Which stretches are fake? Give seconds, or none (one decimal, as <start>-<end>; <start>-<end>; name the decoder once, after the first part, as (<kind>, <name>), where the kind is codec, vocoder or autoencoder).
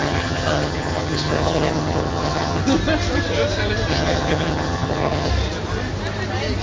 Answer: 0.0-2.6 (vocoder, HiFi-GAN); 3.9-5.3